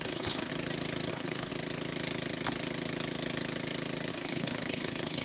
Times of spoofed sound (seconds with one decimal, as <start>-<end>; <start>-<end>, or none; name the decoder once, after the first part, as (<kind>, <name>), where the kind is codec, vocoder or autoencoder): 0.0-0.5 (codec, HILCodec); 1.1-1.5; 4.1-5.2

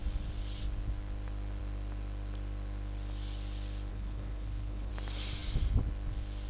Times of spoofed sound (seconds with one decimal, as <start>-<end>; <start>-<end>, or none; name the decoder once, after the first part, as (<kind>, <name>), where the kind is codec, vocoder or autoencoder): 3.9-4.9 (codec, HILCodec)

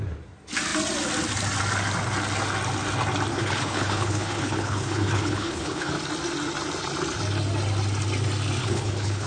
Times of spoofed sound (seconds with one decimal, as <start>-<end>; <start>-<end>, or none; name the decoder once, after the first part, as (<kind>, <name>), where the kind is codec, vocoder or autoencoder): 3.3-5.9 (codec, HILCodec); 8.6-9.3

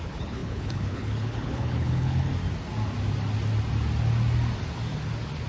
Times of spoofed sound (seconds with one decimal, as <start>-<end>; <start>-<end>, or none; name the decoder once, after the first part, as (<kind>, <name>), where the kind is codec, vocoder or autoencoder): 0.0-2.3 (codec, HILCodec)

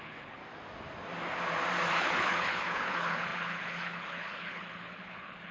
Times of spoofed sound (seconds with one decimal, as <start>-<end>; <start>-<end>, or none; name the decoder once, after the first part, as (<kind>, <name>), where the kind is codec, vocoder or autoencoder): 0.0-0.4 (codec, HILCodec); 1.9-5.5